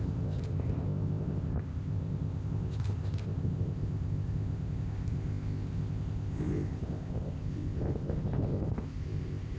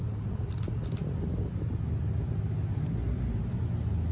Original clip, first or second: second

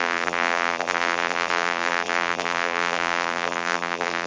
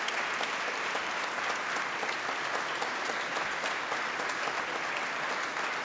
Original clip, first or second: second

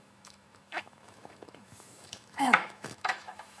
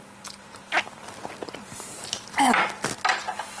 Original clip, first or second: second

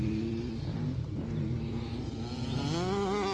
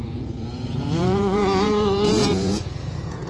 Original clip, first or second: first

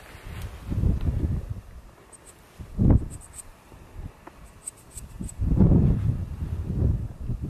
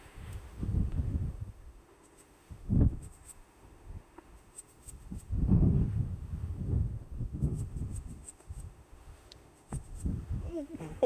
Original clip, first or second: first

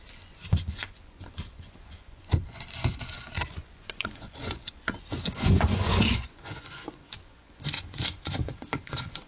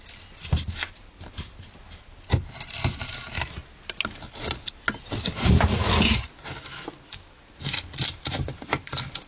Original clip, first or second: second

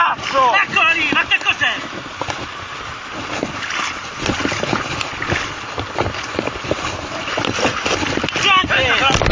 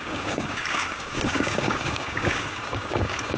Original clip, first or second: first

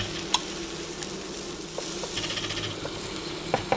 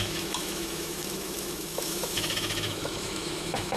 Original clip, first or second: first